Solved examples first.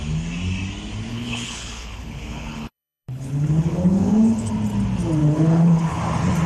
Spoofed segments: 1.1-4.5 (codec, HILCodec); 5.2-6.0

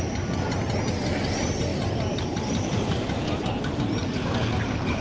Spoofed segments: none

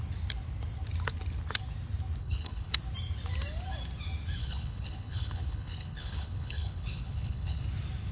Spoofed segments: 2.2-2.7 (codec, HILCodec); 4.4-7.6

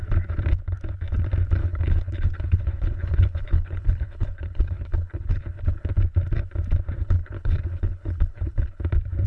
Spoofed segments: 1.6-5.9 (codec, HILCodec); 7.0-8.8